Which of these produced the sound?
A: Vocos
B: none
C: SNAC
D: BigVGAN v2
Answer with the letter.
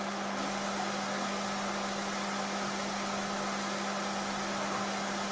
B